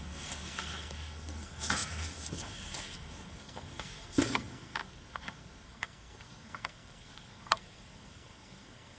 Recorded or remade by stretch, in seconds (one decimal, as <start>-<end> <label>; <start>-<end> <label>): 0.0-9.0 remade